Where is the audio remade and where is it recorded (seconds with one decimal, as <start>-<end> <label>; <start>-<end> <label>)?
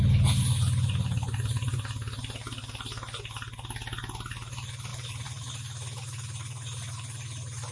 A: 0.0-4.9 recorded; 4.9-5.5 remade; 5.5-7.7 recorded